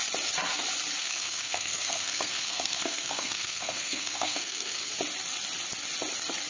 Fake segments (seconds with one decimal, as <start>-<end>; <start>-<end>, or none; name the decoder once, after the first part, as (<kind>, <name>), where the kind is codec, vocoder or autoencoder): 1.0-4.9 (codec, SNAC)